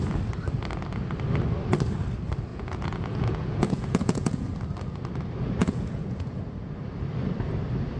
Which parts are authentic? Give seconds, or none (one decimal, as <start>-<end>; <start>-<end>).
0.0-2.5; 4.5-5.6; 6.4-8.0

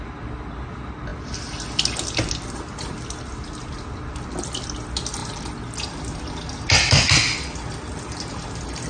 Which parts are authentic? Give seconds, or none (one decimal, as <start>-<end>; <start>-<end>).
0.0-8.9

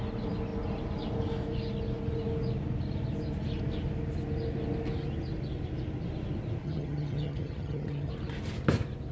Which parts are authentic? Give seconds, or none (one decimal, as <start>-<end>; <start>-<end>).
0.0-6.6; 8.1-9.1

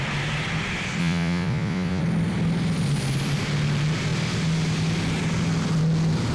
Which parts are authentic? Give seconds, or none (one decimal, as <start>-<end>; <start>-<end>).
0.0-1.0; 2.0-6.3

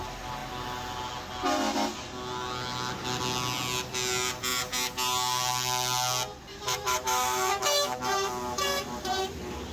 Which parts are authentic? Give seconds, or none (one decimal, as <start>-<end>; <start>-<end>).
0.0-6.5; 8.0-9.7

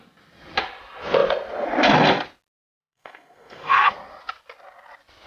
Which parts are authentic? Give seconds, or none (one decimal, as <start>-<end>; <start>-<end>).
0.0-2.8; 3.9-5.3

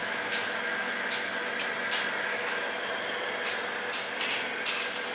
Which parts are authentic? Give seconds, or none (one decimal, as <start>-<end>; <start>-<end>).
1.5-2.3; 2.9-5.1